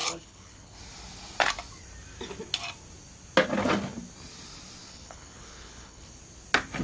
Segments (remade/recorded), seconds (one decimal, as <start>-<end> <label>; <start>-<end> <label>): 0.0-0.8 remade; 0.8-4.8 recorded; 4.8-6.1 remade; 6.1-6.8 recorded